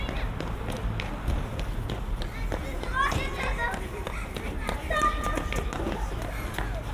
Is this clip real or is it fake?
real